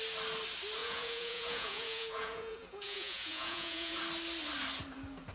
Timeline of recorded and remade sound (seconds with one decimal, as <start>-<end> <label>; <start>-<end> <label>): 0.0-0.8 recorded; 0.8-4.0 remade; 4.0-5.3 recorded